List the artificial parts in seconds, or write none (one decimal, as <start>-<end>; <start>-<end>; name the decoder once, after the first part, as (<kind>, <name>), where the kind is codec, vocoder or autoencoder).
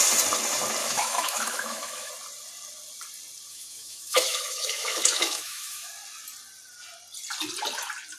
0.8-2.1 (autoencoder, DAC-VAE); 3.5-5.9